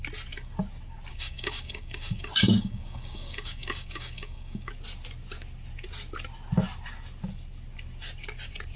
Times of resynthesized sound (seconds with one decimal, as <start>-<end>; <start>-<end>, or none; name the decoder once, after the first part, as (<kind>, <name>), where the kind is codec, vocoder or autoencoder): 1.1-4.7 (codec, DAC)

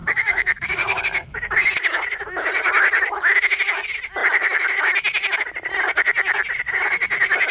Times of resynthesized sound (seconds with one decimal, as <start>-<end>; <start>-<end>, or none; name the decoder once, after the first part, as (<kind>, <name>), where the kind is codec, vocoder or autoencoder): 0.0-1.0 (codec, DAC)